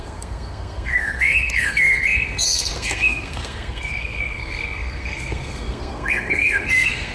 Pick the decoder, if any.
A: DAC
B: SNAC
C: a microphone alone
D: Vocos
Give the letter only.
B